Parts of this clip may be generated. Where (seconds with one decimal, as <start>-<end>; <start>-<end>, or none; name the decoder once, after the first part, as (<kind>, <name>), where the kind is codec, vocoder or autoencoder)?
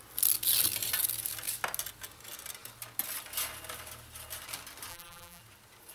4.9-5.4 (vocoder, BigVGAN v2)